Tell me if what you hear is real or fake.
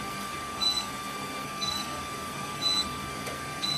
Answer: fake